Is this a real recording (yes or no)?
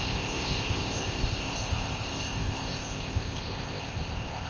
no